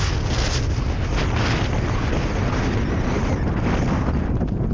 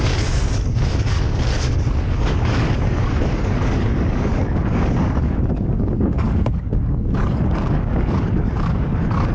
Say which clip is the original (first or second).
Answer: first